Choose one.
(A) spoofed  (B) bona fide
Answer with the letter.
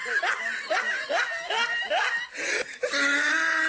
B